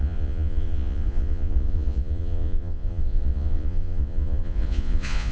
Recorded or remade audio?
remade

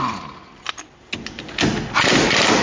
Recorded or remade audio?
recorded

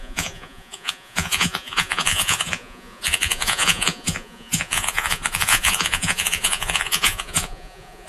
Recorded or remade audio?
remade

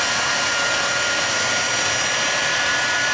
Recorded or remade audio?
recorded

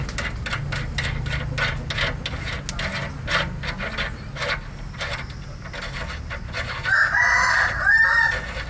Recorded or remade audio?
recorded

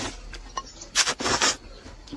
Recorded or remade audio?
recorded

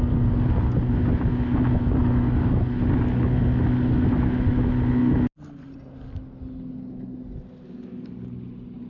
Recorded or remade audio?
recorded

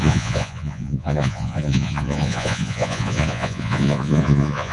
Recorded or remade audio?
remade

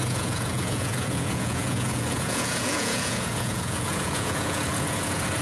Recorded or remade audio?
remade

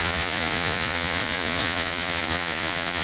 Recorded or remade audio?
remade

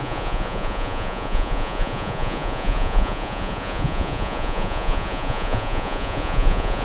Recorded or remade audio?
remade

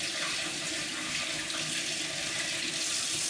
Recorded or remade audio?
recorded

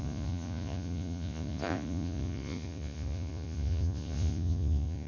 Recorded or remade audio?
remade